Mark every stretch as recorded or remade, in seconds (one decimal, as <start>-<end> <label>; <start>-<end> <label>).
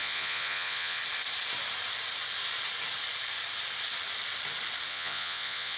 0.0-1.0 remade; 1.0-4.9 recorded; 4.9-5.8 remade